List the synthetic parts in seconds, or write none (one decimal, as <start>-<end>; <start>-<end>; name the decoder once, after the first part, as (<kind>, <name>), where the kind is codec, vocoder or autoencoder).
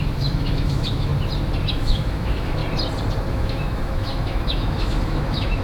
0.0-1.1 (autoencoder, DAC-VAE); 1.7-2.6; 3.3-5.6